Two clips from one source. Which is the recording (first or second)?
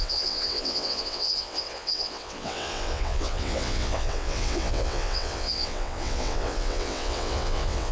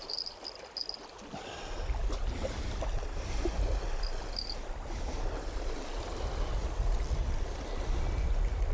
second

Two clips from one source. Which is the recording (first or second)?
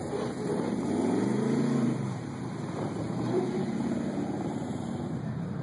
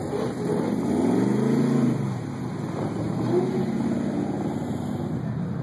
second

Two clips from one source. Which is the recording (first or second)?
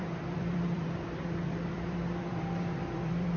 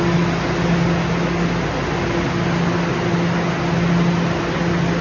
second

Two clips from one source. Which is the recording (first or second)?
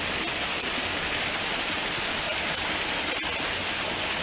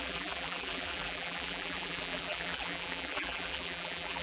first